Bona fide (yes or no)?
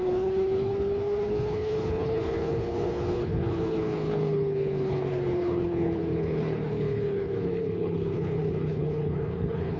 no